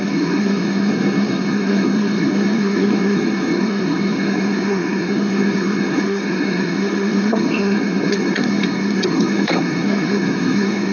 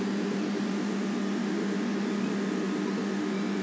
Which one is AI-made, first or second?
first